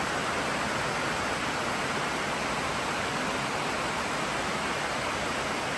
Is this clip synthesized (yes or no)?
no